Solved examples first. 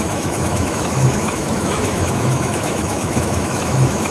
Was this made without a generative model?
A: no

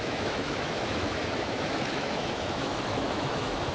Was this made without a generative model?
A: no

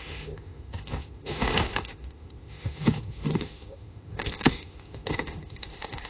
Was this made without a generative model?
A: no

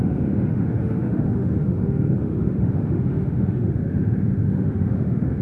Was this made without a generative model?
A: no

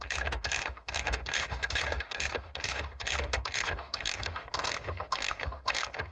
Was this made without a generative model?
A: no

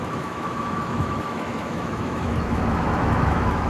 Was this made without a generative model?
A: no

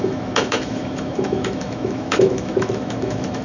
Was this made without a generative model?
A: no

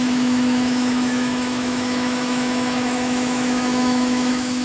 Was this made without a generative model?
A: no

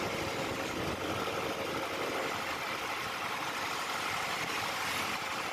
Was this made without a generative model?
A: yes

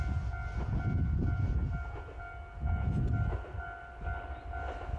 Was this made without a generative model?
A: yes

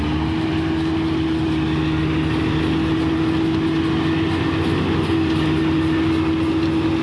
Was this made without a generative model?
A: yes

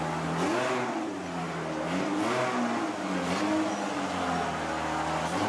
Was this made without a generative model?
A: yes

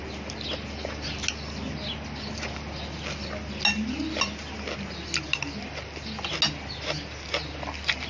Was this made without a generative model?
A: yes